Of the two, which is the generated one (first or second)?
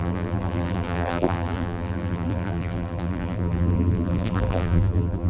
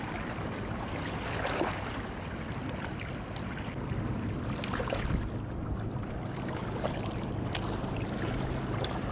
first